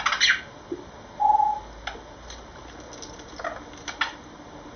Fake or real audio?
real